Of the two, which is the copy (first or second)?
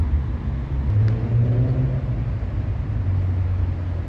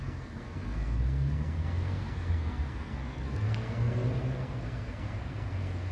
second